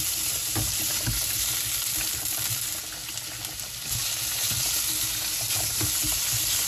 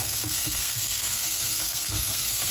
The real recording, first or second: first